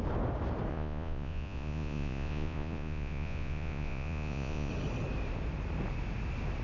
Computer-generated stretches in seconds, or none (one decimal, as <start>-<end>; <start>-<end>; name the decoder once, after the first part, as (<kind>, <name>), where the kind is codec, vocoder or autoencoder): 0.7-4.7 (vocoder, Vocos)